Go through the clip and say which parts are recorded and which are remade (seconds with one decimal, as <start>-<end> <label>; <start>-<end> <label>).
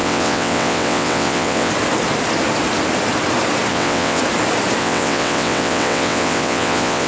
0.0-1.7 remade; 1.7-3.7 recorded; 3.7-4.2 remade; 4.2-4.8 recorded; 4.8-7.1 remade